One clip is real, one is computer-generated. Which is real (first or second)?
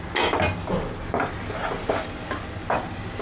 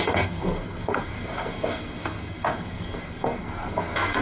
first